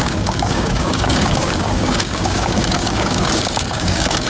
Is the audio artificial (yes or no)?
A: yes